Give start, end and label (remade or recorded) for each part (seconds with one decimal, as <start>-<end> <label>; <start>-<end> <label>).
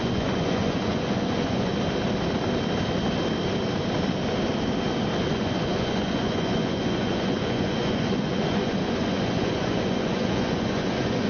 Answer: 0.0-1.7 remade; 1.7-5.3 recorded; 5.3-11.3 remade